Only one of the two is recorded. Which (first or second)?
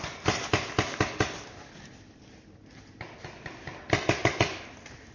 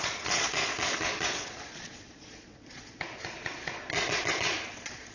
first